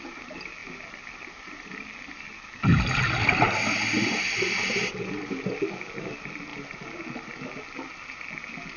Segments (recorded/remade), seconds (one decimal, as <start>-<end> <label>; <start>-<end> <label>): 0.0-8.8 recorded